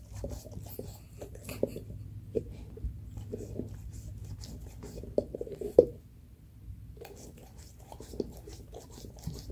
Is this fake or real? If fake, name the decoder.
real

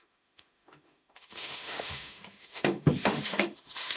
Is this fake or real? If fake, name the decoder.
fake, autoencoder, DAC-VAE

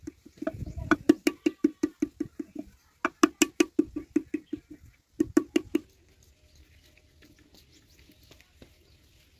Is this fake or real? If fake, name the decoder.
real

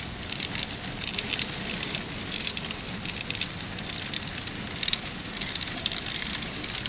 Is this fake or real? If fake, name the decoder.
real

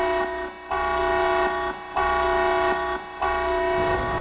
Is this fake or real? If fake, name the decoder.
real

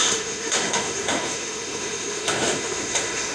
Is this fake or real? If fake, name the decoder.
fake, autoencoder, DAC-VAE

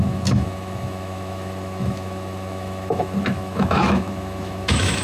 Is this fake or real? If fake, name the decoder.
fake, autoencoder, DAC-VAE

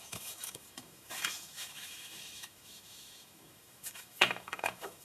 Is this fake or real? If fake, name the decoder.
fake, autoencoder, DAC-VAE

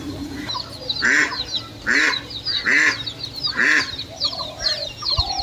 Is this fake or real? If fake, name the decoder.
real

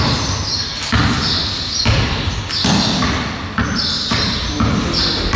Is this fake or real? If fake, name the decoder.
real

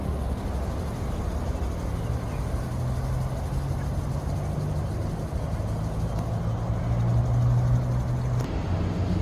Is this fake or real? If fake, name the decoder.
real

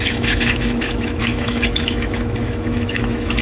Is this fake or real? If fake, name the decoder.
fake, autoencoder, DAC-VAE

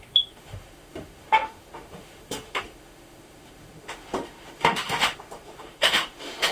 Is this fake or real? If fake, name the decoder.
fake, autoencoder, DAC-VAE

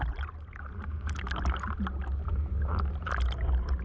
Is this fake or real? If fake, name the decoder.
real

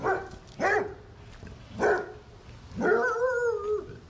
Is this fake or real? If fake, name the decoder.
real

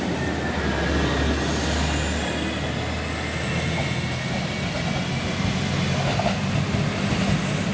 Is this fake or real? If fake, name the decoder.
real